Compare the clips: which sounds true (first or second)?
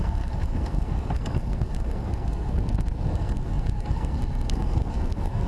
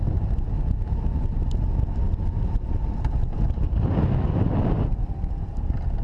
second